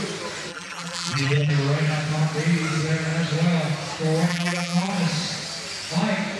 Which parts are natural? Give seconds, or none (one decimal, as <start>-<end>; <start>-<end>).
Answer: 0.0-0.5; 1.5-4.3; 4.9-6.4